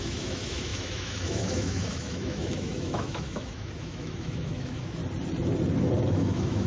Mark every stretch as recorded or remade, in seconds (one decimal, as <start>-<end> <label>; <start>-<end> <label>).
0.0-5.0 remade; 5.0-6.1 recorded; 6.1-6.7 remade